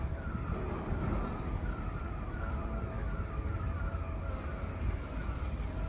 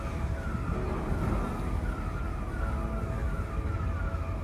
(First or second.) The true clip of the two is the second